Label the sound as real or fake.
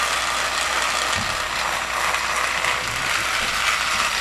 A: real